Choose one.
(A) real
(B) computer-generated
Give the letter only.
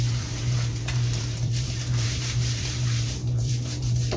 B